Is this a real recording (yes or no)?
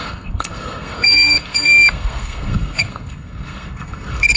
no